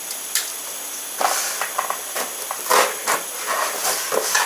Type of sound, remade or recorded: remade